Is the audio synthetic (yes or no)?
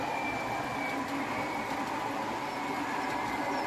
no